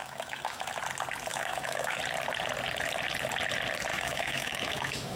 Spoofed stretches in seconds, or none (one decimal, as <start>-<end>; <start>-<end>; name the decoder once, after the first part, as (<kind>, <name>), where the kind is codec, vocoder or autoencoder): 0.0-0.7 (autoencoder, DAC-VAE); 1.3-2.0; 3.9-5.2